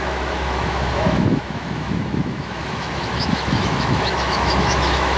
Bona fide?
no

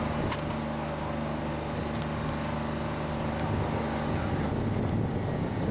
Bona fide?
yes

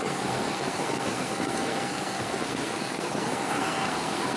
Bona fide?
no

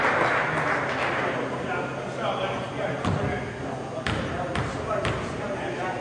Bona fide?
yes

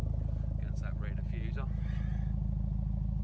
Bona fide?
yes